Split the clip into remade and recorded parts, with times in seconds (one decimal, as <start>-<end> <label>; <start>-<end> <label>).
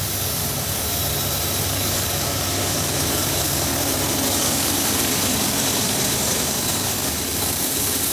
0.0-1.0 remade; 1.0-1.6 recorded; 1.6-3.7 remade; 3.7-4.4 recorded; 4.4-8.1 remade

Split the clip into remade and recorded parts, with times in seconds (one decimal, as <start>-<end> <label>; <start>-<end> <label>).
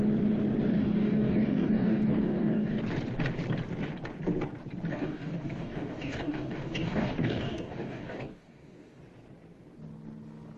0.0-0.7 recorded; 0.7-2.8 remade; 2.8-4.9 recorded; 4.9-9.0 remade; 9.0-10.6 recorded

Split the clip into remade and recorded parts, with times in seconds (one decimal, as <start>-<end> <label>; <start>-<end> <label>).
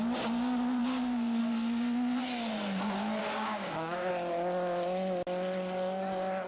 0.0-0.8 recorded; 0.8-1.4 remade; 1.4-3.2 recorded; 3.2-4.1 remade; 4.1-6.5 recorded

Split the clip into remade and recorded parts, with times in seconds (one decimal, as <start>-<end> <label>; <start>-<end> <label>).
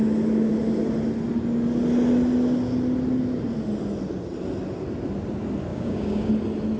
0.0-5.7 recorded; 5.7-6.3 remade; 6.3-6.8 recorded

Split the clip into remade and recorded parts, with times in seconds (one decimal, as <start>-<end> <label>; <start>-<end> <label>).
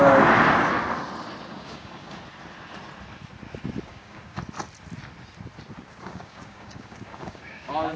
0.0-1.5 recorded; 1.5-2.2 remade; 2.2-3.9 recorded; 3.9-4.4 remade; 4.4-5.8 recorded; 5.8-8.0 remade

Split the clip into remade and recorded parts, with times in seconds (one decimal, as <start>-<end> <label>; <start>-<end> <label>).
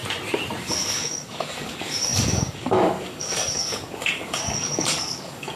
0.0-0.6 recorded; 0.6-5.6 remade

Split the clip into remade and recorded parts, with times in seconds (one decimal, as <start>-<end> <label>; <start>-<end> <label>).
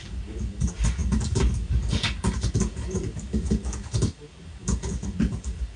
0.0-5.8 remade